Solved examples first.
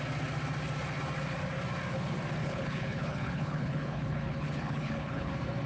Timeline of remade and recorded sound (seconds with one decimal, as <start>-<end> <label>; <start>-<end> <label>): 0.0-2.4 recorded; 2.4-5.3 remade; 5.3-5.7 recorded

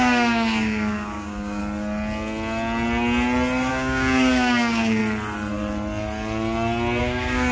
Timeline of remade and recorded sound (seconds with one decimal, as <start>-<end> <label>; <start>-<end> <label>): 0.0-1.6 remade; 1.6-3.7 recorded; 3.7-5.0 remade; 5.0-7.0 recorded; 7.0-7.5 remade

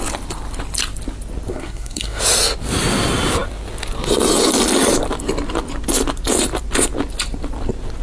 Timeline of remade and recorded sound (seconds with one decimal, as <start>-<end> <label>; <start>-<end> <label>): 0.0-1.5 recorded; 1.5-2.2 remade; 2.2-8.0 recorded